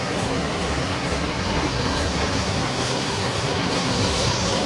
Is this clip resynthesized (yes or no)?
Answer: yes